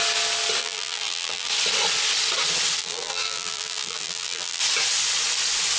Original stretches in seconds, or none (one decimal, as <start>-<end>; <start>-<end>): 0.0-0.6; 1.5-2.8; 4.6-5.8